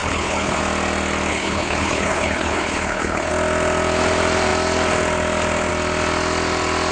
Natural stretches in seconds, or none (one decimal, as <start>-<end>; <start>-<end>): 0.6-1.3; 3.3-6.9